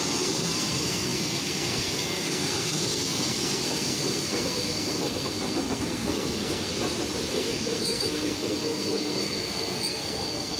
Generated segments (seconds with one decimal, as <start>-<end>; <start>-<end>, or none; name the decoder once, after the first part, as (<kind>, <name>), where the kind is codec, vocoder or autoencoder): 0.0-6.7 (codec, SNAC); 7.3-10.6